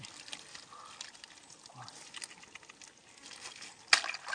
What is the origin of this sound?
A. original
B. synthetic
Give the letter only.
A